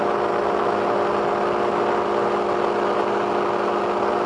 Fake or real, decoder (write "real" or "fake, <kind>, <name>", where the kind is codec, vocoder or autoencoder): real